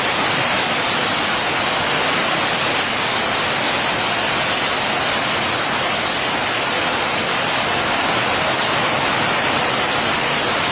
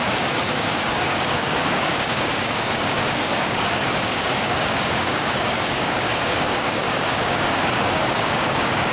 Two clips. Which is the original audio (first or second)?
first